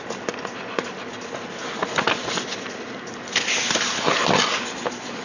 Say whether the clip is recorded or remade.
recorded